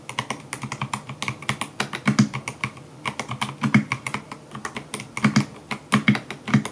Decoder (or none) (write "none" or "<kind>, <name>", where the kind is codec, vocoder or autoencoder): none